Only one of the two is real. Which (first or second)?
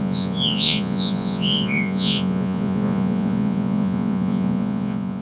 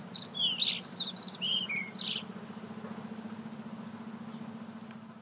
second